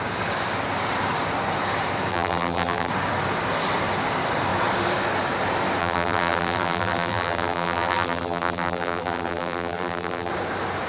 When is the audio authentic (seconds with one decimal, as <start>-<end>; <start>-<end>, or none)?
0.0-2.1; 2.9-5.8; 10.3-10.9